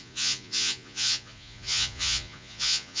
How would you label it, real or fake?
fake